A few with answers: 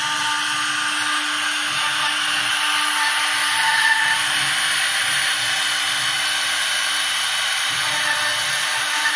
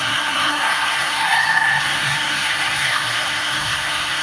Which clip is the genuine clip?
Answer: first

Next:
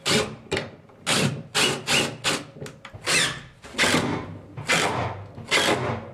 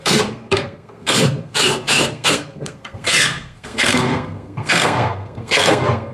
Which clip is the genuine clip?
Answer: first